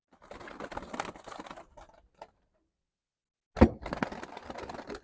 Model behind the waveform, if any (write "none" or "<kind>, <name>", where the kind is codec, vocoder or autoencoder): none